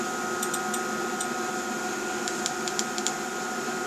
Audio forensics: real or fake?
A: real